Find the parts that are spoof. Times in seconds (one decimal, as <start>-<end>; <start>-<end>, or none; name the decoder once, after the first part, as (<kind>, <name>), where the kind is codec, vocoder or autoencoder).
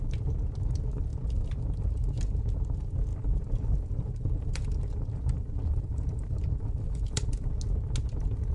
1.1-2.4 (vocoder, BigVGAN v2); 3.1-7.5